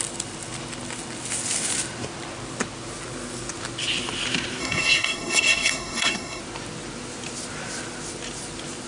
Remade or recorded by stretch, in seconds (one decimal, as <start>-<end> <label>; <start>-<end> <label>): 0.0-4.6 recorded; 4.6-6.4 remade; 6.4-8.9 recorded